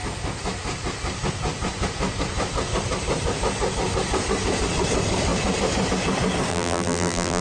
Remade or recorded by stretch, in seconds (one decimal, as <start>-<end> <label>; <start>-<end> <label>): 0.0-6.5 recorded; 6.5-7.4 remade